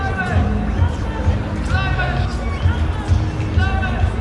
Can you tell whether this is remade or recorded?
recorded